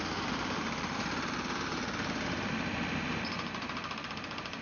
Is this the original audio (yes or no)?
no